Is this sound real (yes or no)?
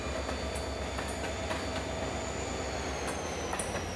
yes